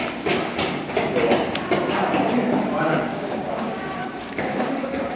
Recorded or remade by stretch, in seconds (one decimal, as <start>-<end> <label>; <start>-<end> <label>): 0.0-2.8 recorded; 2.8-5.2 remade

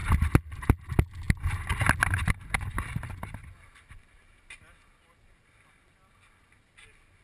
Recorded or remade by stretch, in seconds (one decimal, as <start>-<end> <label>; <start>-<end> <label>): 0.0-7.2 recorded

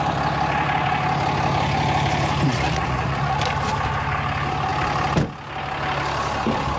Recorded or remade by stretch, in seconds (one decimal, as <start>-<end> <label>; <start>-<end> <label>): 0.0-2.5 recorded; 2.5-3.4 remade; 3.4-6.8 recorded

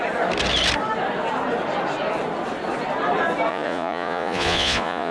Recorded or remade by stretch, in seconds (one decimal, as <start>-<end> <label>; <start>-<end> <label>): 0.0-3.5 recorded; 3.5-5.1 remade

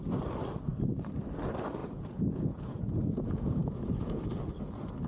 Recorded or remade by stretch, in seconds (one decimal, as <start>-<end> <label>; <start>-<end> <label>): 0.0-1.8 recorded; 1.8-4.2 remade; 4.2-5.1 recorded

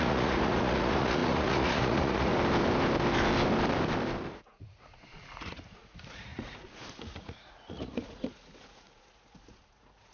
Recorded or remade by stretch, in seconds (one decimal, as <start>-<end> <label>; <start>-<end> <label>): 0.0-2.3 remade; 2.3-4.3 recorded; 4.3-10.1 remade